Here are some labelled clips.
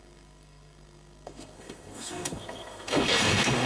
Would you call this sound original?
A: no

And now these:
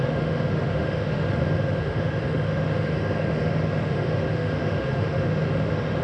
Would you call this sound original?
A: no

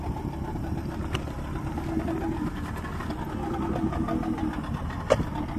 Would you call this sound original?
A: yes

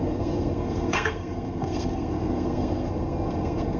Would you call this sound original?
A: no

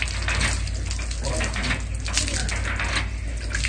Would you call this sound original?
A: yes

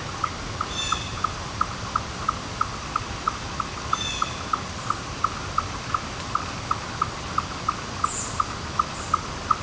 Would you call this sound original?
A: yes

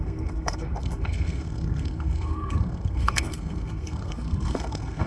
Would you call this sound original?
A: no